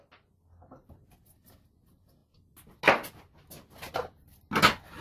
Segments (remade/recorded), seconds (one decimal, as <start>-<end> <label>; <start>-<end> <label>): 0.0-5.0 recorded